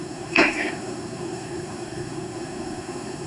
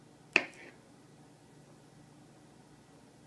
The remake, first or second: first